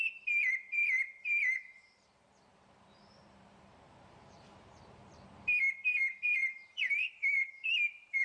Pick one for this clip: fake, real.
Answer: fake